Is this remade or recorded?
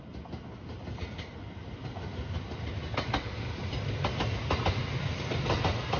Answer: recorded